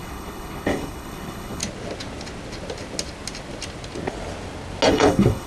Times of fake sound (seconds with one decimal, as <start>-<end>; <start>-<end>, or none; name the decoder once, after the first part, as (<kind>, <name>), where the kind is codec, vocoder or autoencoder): 0.0-1.6 (codec, HILCodec); 4.9-5.5